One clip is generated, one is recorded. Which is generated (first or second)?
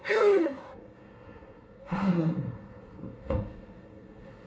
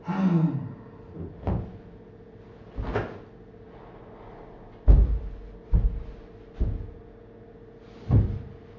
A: first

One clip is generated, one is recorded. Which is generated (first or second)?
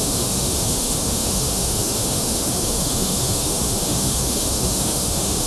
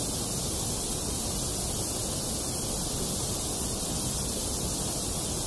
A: first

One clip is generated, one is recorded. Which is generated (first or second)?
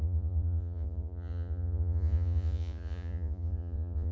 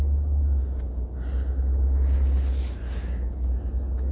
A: first